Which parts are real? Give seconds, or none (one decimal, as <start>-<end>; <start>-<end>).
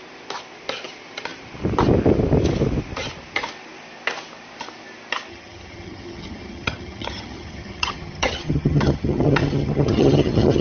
0.0-5.3